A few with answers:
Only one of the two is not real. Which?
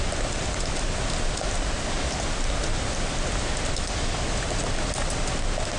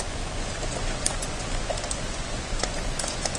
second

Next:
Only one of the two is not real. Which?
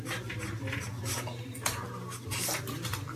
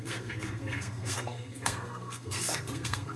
second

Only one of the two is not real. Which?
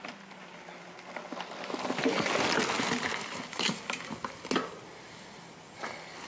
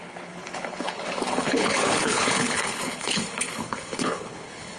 second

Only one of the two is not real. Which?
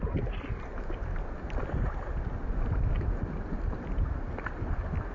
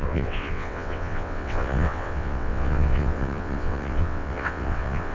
second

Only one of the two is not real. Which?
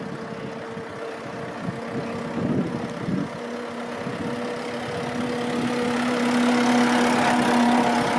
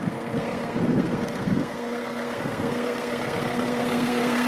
second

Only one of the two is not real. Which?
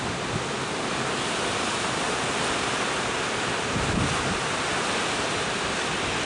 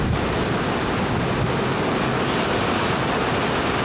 first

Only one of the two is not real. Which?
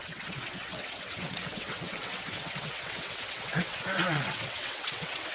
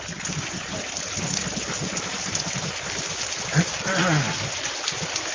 first